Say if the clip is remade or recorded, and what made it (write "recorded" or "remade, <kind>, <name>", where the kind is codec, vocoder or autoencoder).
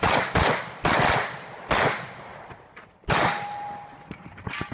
remade, vocoder, BigVGAN v2